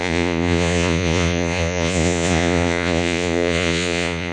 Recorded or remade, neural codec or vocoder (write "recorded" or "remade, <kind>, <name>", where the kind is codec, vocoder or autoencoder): remade, vocoder, Vocos